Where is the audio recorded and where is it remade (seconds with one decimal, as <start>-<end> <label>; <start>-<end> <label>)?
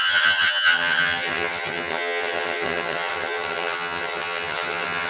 0.0-5.1 remade